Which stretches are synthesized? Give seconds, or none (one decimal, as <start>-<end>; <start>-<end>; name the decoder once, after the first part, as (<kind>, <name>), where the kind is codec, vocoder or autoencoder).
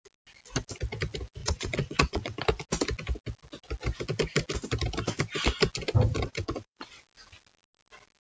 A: 1.4-2.4 (vocoder, WaveNeXt); 6.2-7.0